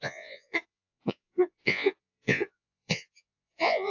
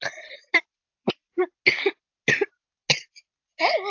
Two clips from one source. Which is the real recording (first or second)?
second